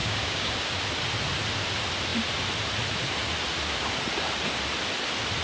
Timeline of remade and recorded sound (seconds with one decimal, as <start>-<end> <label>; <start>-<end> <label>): 0.0-0.5 remade; 0.5-5.4 recorded